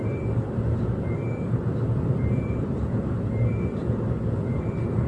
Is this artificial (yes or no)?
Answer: yes